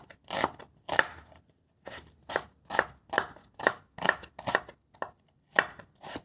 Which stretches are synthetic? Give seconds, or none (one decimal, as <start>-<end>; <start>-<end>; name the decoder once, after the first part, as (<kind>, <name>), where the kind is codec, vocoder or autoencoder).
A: 3.4-4.3 (codec, DAC)